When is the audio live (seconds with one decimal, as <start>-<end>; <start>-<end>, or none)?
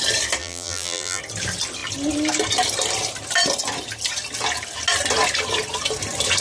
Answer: 0.0-0.4; 1.2-6.4